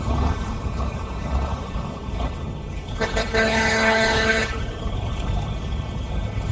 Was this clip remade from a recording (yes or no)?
yes